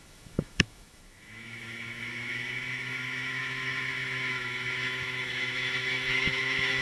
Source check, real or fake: fake